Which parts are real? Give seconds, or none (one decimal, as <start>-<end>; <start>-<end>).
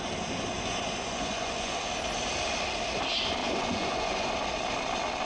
0.0-0.7; 1.9-3.4; 4.3-5.3